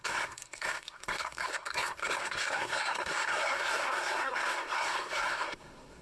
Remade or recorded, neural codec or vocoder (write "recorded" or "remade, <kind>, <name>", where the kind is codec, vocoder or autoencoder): remade, codec, SNAC